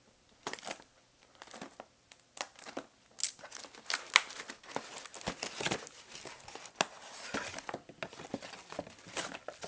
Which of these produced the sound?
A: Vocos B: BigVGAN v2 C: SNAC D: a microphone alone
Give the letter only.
D